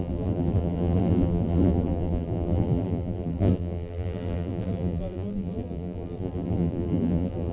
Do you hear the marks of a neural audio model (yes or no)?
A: yes